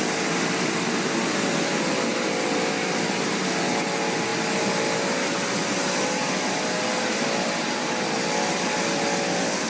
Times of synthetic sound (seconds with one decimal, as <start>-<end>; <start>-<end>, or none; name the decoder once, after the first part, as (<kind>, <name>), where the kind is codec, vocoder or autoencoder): none